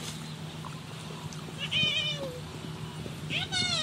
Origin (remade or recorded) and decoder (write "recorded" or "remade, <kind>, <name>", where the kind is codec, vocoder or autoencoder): recorded